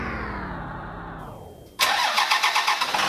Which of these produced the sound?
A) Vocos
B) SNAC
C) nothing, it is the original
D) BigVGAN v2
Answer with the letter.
C